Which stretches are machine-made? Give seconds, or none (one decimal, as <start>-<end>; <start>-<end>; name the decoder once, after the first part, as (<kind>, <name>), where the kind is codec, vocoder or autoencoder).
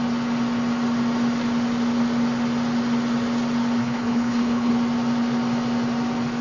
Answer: 3.8-4.7 (codec, HILCodec)